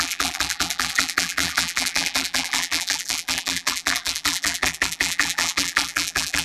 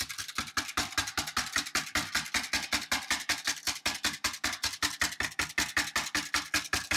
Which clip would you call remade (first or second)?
first